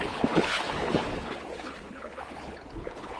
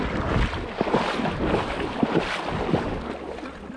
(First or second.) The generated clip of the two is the first